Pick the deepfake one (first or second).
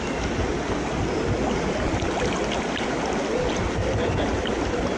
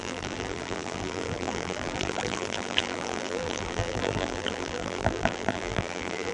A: second